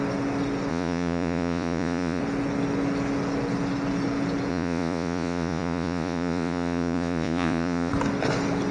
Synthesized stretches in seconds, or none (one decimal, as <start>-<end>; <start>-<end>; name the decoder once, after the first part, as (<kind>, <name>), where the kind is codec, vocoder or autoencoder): 0.7-2.2 (vocoder, Vocos); 4.5-7.9